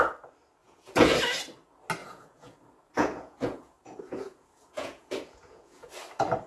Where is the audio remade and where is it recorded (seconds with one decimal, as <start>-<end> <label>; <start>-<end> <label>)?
0.0-0.6 recorded; 0.6-1.2 remade; 1.2-2.0 recorded; 2.0-5.9 remade; 5.9-6.5 recorded